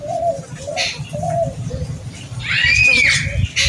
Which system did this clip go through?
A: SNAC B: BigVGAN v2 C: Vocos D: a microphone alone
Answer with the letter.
D